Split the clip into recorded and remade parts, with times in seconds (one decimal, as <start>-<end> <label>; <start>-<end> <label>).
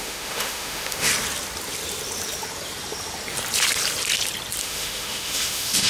0.0-1.1 remade; 1.1-4.6 recorded; 4.6-5.9 remade